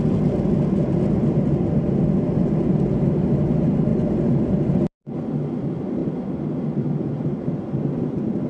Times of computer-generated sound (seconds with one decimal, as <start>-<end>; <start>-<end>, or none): 3.9-5.0